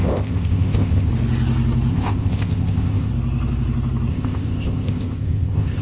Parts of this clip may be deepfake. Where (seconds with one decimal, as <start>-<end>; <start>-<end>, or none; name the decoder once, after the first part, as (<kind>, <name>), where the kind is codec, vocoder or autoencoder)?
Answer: 0.0-1.1 (codec, ZipCodec); 1.9-3.1; 4.1-5.8